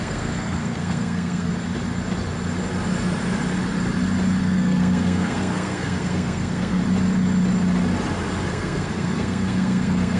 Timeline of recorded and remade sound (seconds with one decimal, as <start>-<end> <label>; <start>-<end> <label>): 0.0-1.5 remade; 1.5-4.4 recorded; 4.4-6.8 remade; 6.8-8.5 recorded; 8.5-10.2 remade